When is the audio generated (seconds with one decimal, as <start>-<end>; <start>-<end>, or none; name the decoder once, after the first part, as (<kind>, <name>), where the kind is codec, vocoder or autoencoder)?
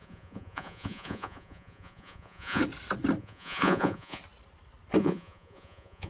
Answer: 0.0-2.6 (vocoder, Vocos); 3.2-4.2; 5.0-6.1